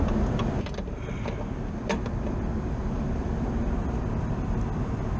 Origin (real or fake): real